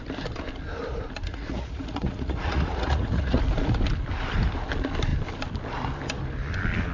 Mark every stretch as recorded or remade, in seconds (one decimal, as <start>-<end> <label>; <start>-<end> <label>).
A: 0.0-1.3 recorded; 1.3-3.4 remade; 3.4-6.9 recorded